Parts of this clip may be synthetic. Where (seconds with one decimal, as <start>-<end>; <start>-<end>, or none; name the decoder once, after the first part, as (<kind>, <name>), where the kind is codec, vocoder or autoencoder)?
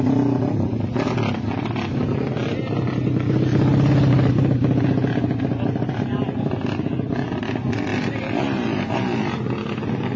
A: 7.9-9.0 (vocoder, BigVGAN v2)